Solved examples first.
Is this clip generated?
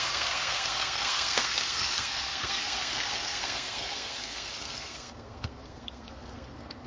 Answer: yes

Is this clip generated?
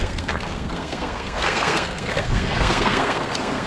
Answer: yes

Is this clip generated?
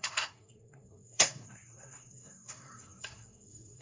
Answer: yes